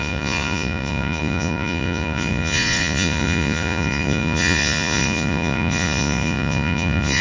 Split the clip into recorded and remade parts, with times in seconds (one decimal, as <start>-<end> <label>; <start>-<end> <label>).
0.0-7.2 remade